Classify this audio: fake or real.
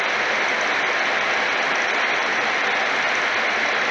real